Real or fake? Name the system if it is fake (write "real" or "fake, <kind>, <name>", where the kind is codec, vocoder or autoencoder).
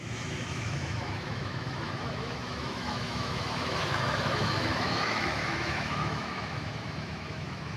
fake, autoencoder, DAC-VAE